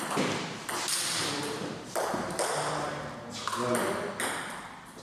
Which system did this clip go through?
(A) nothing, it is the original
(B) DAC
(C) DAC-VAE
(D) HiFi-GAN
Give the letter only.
A